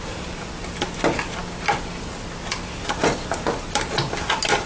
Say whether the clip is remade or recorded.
recorded